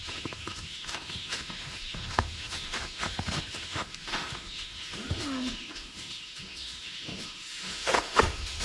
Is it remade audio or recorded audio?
remade